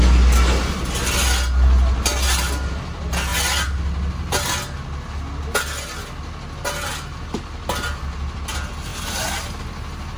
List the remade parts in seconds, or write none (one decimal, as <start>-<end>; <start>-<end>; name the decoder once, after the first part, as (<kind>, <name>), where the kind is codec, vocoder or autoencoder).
none